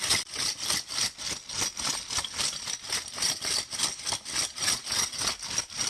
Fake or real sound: real